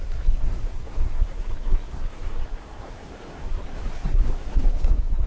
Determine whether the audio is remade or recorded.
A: remade